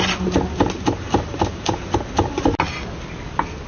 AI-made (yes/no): no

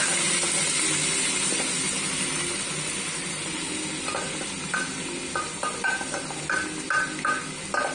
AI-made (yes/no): no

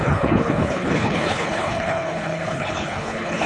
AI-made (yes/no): yes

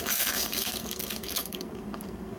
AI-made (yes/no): yes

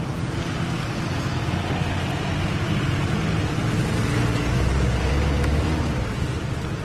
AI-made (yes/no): no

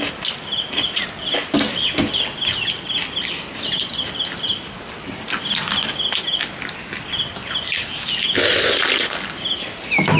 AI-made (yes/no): no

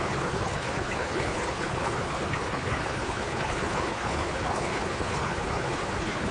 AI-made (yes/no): yes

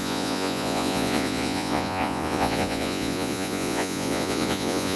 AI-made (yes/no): yes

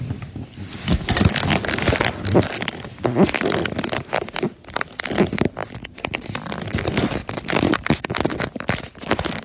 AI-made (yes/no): no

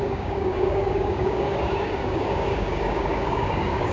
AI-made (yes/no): yes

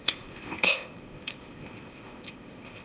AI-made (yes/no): yes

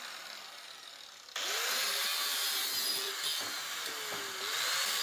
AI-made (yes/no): no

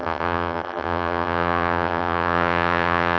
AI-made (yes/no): yes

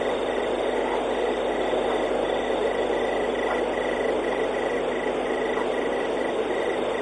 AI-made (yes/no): no